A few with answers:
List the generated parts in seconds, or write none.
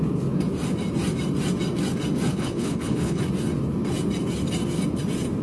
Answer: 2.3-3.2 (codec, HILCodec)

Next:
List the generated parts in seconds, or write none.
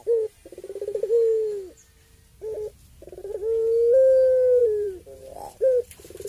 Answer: 4.6-6.3 (vocoder, BigVGAN v2)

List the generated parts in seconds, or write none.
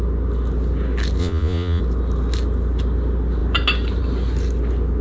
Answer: 1.2-1.8 (vocoder, Vocos)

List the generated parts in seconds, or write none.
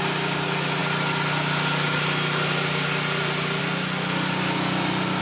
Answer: none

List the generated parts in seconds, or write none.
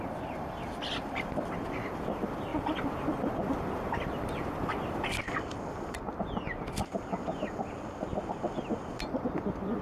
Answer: 0.0-9.8 (vocoder, BigVGAN v2)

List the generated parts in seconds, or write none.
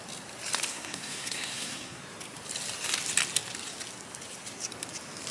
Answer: 0.7-2.0 (codec, SNAC)